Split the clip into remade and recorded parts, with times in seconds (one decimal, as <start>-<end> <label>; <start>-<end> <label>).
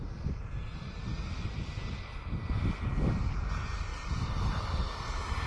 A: 0.0-5.5 recorded